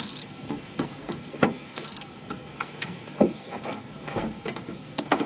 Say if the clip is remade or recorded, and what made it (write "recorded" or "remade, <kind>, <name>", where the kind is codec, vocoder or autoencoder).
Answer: remade, codec, SNAC